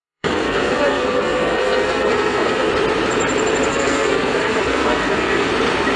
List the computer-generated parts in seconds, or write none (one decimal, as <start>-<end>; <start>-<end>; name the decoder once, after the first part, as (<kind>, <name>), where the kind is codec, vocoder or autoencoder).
0.0-2.7 (codec, SNAC); 3.7-5.5